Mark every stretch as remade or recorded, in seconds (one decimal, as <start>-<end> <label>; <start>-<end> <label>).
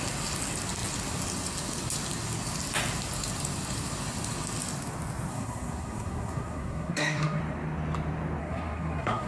0.0-5.3 recorded; 5.3-7.4 remade; 7.4-8.4 recorded; 8.4-9.3 remade